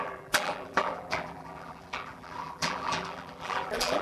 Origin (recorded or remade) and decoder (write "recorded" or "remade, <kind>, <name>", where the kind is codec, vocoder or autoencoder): remade, vocoder, BigVGAN v2